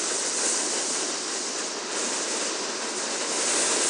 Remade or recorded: recorded